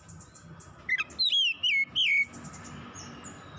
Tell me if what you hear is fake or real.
real